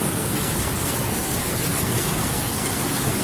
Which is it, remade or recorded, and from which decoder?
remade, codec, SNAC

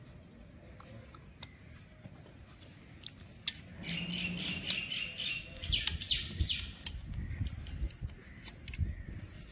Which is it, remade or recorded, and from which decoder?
recorded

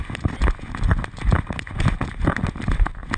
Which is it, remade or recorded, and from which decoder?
recorded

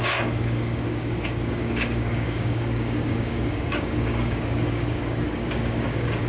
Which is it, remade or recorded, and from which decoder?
remade, codec, DAC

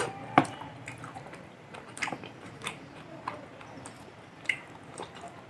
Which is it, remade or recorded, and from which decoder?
remade, vocoder, BigVGAN v2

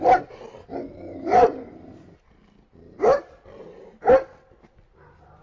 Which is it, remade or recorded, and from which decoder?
recorded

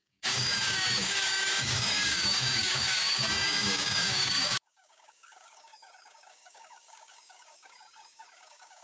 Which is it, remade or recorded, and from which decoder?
remade, codec, DAC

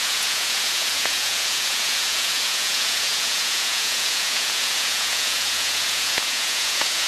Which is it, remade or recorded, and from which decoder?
remade, vocoder, Vocos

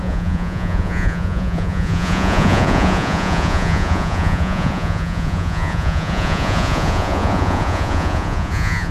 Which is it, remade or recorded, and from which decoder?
remade, vocoder, Vocos